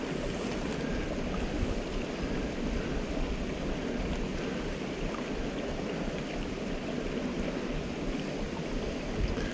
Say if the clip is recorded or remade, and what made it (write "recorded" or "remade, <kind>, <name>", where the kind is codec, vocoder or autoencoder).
recorded